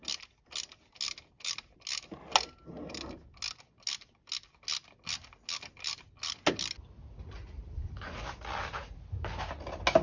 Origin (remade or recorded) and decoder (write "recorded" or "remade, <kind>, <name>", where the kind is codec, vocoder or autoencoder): recorded